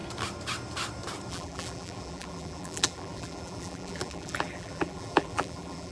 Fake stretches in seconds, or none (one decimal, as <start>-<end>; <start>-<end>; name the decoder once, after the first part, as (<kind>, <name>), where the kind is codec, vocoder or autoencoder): 1.3-5.9 (vocoder, BigVGAN v2)

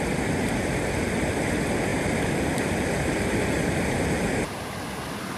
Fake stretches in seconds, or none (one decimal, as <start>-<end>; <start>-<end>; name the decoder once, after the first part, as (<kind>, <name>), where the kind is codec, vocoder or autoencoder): 1.9-4.2 (vocoder, BigVGAN v2)

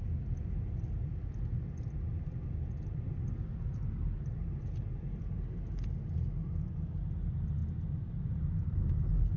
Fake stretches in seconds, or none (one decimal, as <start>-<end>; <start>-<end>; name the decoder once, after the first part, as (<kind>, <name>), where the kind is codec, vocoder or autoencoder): none

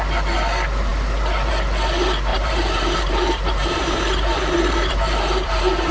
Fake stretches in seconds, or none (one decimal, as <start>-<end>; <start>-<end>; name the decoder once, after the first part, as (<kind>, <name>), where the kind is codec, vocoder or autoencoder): 2.3-5.9 (vocoder, BigVGAN v2)

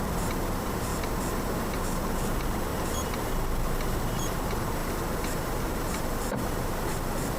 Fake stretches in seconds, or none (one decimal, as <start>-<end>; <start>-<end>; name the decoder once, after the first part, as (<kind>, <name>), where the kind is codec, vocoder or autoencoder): 0.0-0.9 (vocoder, BigVGAN v2); 1.8-7.4

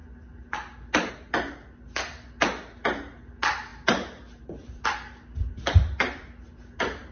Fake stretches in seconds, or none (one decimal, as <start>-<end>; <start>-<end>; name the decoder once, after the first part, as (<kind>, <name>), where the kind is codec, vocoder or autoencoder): none